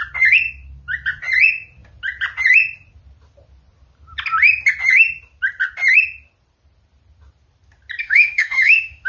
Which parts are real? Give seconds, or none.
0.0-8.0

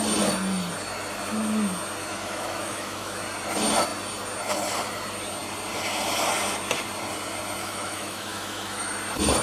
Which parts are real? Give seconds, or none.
0.0-2.0; 3.2-7.6; 9.0-9.4

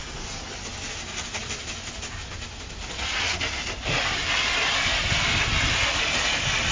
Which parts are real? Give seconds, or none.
0.0-6.7

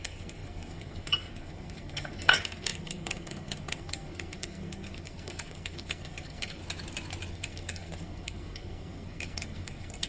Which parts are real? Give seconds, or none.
6.6-7.3

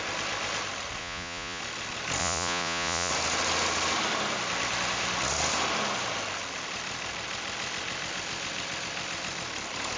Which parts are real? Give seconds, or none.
0.0-1.0; 1.6-2.2; 3.1-10.0

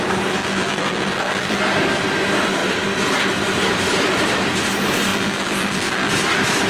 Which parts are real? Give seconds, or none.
0.0-0.4; 1.6-5.1; 6.1-6.7

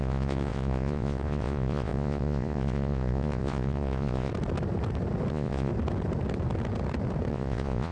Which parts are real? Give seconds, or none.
4.3-5.3; 5.7-7.3